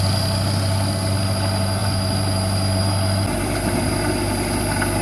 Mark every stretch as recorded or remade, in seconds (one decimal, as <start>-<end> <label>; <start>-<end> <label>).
0.0-5.0 recorded